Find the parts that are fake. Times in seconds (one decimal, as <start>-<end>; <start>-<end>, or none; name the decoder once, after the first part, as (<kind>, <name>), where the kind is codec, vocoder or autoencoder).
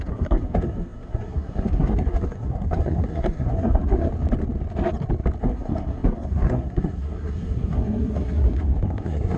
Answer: 0.0-4.1 (codec, SNAC); 5.4-9.4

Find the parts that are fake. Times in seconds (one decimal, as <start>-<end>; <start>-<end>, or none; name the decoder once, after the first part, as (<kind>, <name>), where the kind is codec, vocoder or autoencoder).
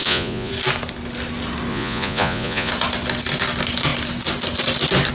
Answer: 0.0-0.5 (vocoder, Vocos); 1.7-2.7